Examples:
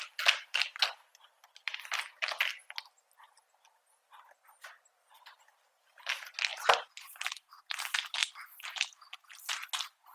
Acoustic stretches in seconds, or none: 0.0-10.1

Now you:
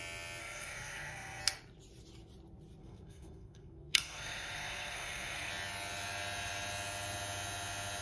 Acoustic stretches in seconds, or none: 0.0-0.4; 1.4-2.8; 5.5-8.0

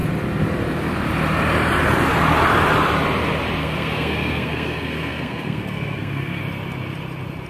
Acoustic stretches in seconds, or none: 0.0-3.6; 6.4-7.5